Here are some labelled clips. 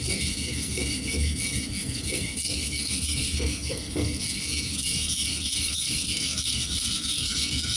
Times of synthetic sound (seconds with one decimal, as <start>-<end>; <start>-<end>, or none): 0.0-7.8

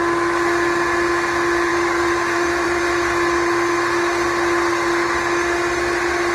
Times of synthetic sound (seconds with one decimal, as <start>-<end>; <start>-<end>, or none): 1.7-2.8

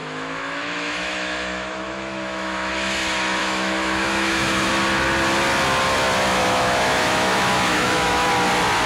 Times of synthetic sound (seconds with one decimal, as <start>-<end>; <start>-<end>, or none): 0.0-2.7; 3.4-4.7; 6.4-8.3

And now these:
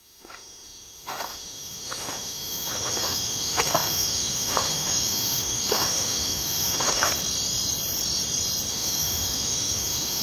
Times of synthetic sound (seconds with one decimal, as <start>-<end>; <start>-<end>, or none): 0.0-7.1; 8.7-10.2